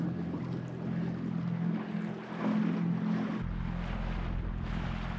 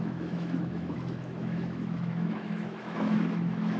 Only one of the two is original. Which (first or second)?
first